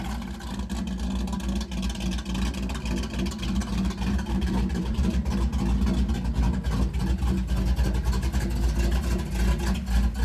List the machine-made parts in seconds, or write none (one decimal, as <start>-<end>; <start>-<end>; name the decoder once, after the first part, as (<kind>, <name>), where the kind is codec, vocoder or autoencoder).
3.6-5.3 (vocoder, BigVGAN v2)